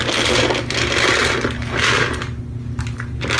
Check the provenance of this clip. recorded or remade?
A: recorded